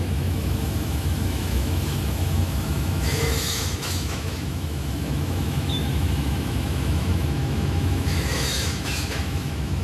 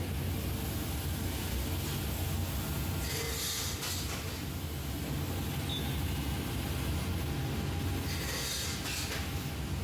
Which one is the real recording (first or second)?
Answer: second